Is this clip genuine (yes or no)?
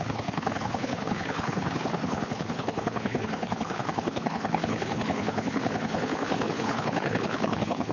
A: no